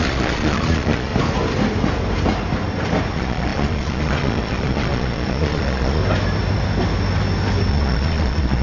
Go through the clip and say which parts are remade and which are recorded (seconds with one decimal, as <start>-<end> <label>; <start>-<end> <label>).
0.0-1.1 remade; 1.1-3.1 recorded; 3.1-6.0 remade; 6.0-7.7 recorded; 7.7-8.6 remade